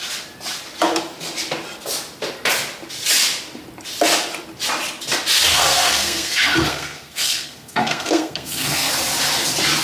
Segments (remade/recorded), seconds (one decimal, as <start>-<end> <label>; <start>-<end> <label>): 0.0-5.5 recorded; 5.5-8.9 remade; 8.9-9.8 recorded